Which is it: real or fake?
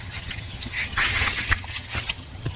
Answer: fake